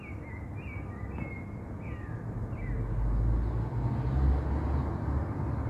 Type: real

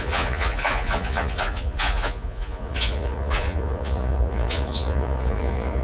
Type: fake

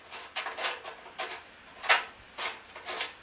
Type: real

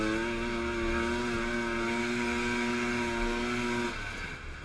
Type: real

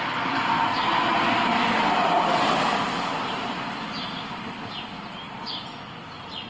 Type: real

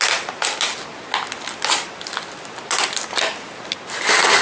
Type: real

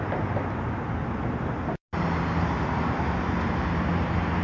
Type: real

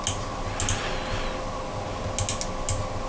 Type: real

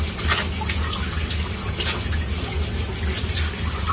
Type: real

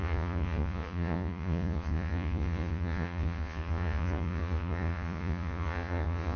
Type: fake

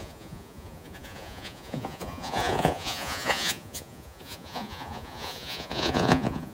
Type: fake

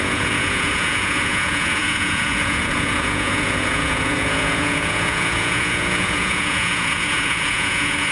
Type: fake